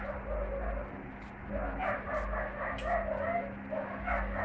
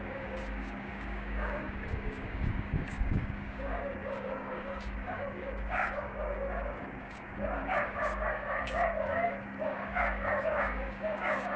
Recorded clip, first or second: first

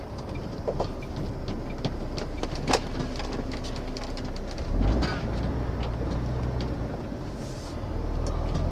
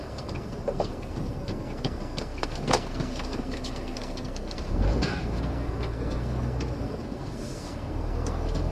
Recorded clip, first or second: first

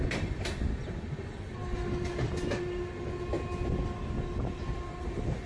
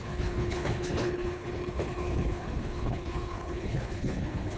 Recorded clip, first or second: first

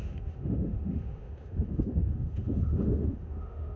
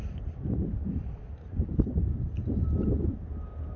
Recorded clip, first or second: second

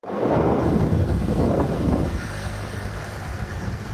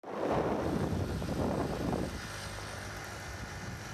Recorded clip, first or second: second